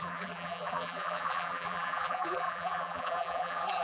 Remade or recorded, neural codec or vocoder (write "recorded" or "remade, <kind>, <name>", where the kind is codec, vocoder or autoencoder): remade, vocoder, BigVGAN v2